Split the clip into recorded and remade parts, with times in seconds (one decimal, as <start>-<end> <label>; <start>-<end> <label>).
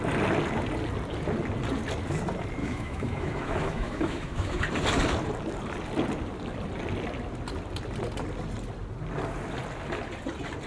0.0-2.6 recorded; 2.6-4.6 remade; 4.6-10.7 recorded